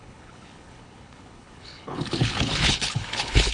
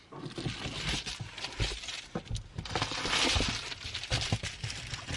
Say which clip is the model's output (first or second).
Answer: first